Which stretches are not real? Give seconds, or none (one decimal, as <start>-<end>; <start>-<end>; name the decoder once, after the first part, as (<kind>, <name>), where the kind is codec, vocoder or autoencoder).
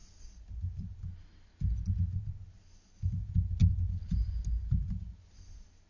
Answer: none